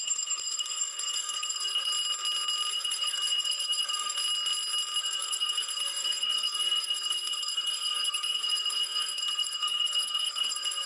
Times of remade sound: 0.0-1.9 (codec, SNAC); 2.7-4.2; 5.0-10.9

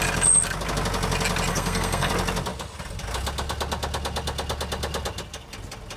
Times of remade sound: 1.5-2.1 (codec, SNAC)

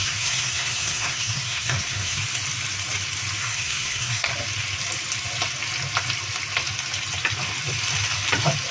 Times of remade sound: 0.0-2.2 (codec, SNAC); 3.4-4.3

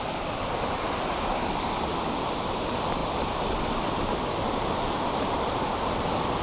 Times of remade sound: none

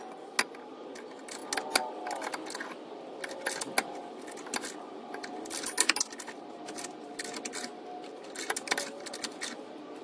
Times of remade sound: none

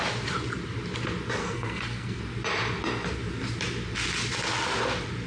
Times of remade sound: 1.4-2.2 (codec, SNAC)

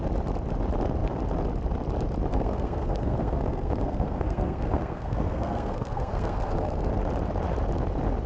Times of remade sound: 2.3-6.9 (codec, SNAC)